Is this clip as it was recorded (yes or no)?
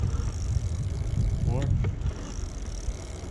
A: yes